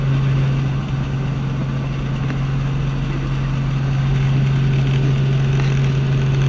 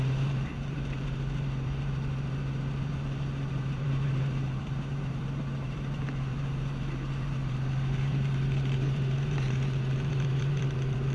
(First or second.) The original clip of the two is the first